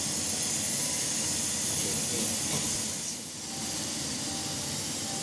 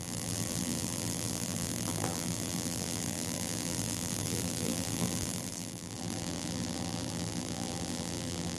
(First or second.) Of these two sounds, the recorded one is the first